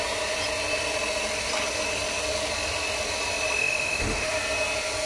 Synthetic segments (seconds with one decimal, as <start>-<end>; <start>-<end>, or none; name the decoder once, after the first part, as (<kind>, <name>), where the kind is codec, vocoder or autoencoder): 3.6-4.3 (autoencoder, DAC-VAE)